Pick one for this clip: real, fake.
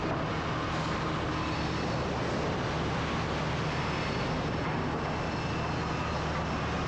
real